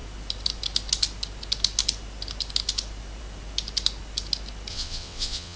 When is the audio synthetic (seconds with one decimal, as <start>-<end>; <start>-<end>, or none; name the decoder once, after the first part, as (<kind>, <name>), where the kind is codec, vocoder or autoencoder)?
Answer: 4.7-5.6 (vocoder, WaveNeXt)